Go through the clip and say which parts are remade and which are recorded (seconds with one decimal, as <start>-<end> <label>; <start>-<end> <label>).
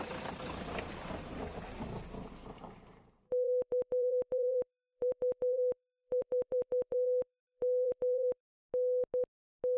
0.0-8.4 remade; 8.4-9.8 recorded